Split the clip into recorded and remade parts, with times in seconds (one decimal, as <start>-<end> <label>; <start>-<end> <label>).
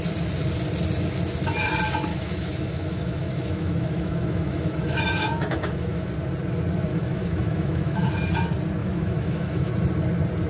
0.0-2.1 recorded; 2.1-6.1 remade; 6.1-6.9 recorded; 6.9-8.1 remade; 8.1-8.8 recorded; 8.8-9.7 remade; 9.7-10.5 recorded